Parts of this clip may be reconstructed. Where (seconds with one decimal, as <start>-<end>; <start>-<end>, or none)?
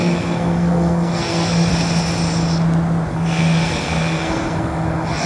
0.0-1.7; 3.1-5.3